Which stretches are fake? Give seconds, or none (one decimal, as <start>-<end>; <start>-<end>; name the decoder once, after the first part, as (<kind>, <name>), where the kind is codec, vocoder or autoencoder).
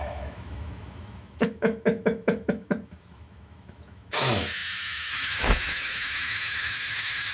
0.0-7.3 (autoencoder, DAC-VAE)